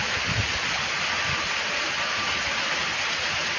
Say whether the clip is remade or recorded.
recorded